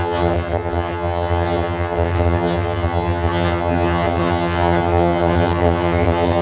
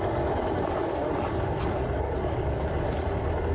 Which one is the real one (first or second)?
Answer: second